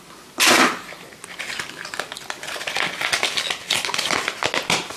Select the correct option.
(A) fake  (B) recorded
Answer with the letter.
B